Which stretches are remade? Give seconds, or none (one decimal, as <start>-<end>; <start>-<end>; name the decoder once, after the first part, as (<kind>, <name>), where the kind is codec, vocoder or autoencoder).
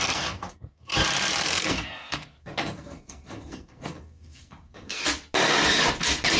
0.0-0.9 (codec, SNAC); 1.4-5.0